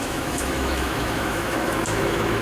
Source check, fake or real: fake